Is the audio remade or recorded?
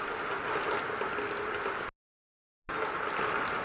recorded